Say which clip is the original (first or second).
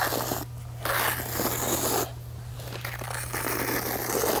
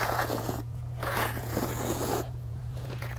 first